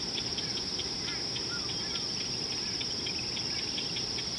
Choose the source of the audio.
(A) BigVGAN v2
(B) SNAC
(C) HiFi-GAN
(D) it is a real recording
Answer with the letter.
D